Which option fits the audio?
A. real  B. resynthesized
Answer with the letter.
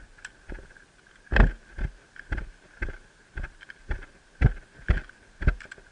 A